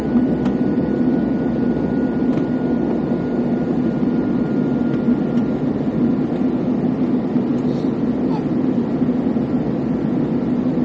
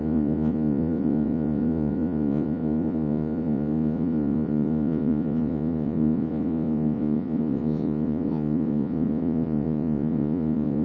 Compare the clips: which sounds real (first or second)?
first